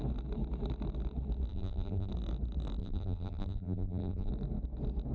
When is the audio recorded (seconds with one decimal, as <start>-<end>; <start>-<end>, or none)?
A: 0.0-1.5; 2.1-2.8; 4.3-5.1